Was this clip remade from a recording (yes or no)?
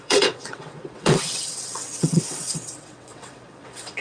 yes